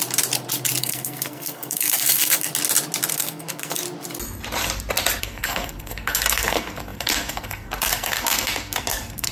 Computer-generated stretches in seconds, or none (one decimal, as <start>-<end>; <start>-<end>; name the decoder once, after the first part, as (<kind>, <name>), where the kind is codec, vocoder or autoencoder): 0.8-2.5 (codec, SNAC); 3.1-3.8; 5.2-9.3